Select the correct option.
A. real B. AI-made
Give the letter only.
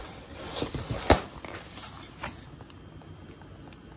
A